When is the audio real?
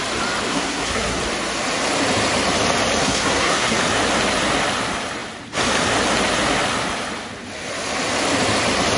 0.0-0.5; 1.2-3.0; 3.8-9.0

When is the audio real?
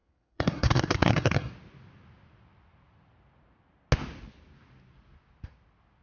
1.5-6.0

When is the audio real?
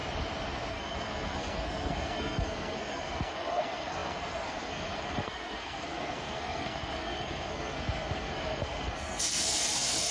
0.0-0.7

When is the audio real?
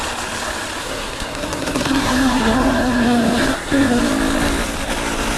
0.0-0.8; 4.0-5.4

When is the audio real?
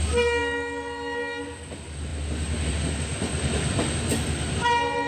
0.0-5.1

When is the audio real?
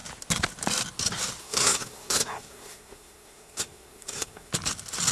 0.0-1.4; 4.5-5.1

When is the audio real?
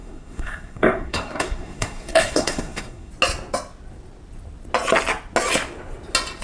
3.1-6.4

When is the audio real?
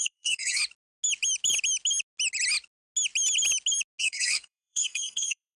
0.6-4.0